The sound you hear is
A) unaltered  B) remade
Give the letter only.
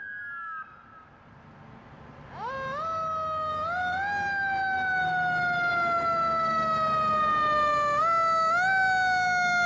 A